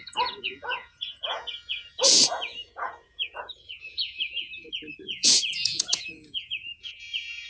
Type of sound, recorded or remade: remade